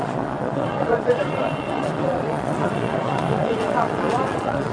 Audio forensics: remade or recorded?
remade